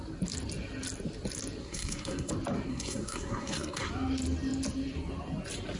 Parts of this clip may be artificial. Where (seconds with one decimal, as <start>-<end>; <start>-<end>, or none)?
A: 1.6-2.3; 2.7-3.9